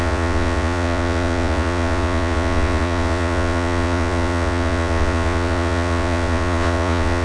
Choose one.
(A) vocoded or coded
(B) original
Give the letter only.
A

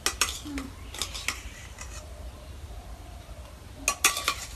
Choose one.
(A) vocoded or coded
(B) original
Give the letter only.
B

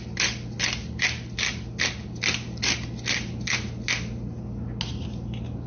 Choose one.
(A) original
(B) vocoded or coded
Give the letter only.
A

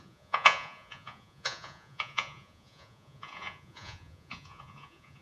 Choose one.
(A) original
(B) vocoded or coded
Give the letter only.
B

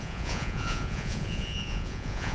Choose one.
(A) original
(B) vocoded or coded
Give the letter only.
B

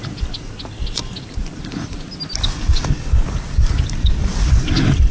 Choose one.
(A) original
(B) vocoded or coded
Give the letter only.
A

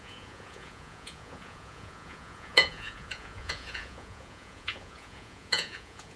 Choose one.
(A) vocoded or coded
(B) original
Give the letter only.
A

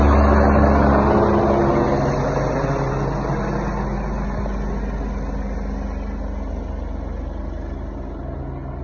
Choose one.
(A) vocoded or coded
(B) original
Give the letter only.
B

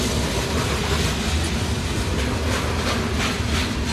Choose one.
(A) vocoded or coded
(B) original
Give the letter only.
B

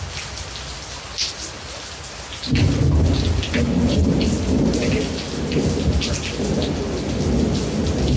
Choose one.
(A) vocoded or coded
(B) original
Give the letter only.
B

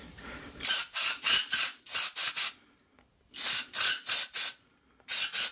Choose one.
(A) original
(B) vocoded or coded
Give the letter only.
A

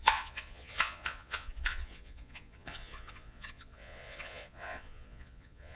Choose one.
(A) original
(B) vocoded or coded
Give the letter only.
B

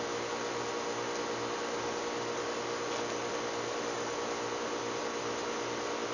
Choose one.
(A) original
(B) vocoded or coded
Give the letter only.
A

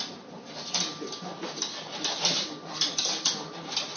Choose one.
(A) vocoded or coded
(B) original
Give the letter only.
B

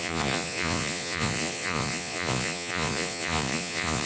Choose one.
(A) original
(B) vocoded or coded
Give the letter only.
B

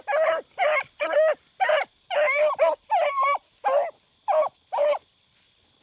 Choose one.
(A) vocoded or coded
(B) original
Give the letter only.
B